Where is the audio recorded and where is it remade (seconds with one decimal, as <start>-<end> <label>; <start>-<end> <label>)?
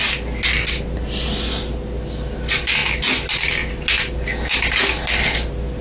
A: 0.0-5.8 recorded